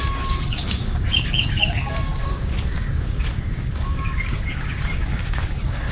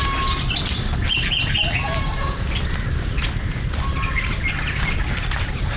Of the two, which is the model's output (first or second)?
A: first